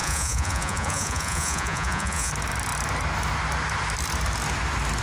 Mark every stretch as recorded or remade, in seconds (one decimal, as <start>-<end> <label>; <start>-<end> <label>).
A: 0.0-2.3 remade; 2.3-5.0 recorded